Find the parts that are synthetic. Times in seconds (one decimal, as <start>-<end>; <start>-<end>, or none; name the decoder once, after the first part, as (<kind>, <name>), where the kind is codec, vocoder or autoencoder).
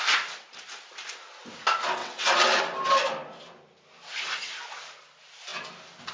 2.0-2.6 (vocoder, WaveNeXt)